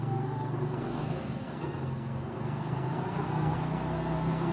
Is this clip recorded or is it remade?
remade